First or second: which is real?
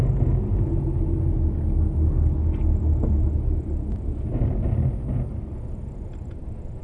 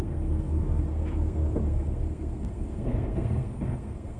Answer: first